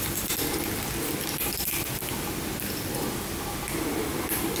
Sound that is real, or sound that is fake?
real